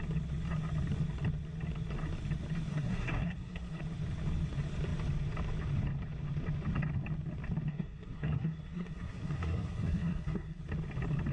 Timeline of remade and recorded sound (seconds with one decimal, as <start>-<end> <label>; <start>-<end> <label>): 0.0-2.7 recorded; 2.7-3.8 remade; 3.8-7.7 recorded; 7.7-10.6 remade; 10.6-11.3 recorded